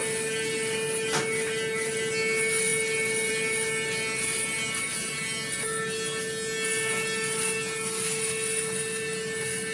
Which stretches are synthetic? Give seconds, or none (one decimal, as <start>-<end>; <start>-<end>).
none